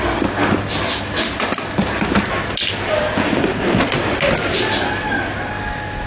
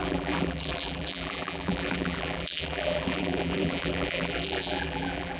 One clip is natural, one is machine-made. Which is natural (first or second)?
first